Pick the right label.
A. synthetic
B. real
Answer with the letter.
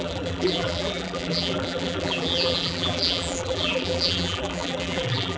A